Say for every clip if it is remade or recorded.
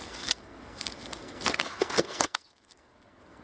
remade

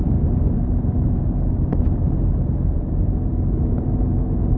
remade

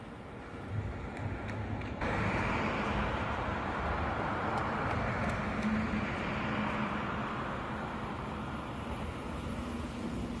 recorded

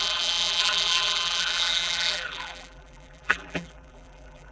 remade